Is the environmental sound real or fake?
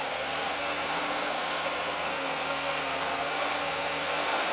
fake